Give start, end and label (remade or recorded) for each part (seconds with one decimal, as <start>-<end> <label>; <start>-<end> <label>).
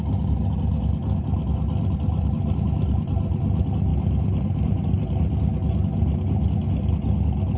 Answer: 0.0-7.6 recorded